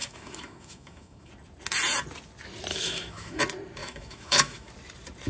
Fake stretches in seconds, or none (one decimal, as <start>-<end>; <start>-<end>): 0.0-1.3; 2.7-3.4; 3.8-4.7